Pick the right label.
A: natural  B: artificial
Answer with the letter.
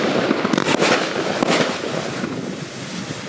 A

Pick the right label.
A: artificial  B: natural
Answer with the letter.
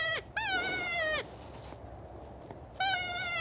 B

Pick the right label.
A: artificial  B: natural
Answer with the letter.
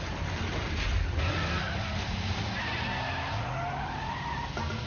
B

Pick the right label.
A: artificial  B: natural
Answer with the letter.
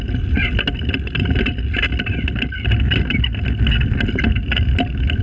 B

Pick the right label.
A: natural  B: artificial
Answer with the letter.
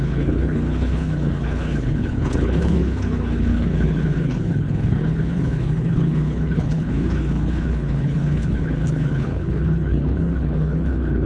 B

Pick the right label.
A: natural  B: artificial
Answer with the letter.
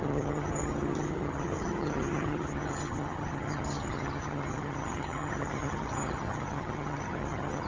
B